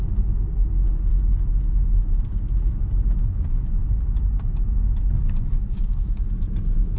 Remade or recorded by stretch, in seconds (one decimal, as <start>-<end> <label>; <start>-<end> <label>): 0.0-5.7 recorded; 5.7-6.2 remade; 6.2-7.0 recorded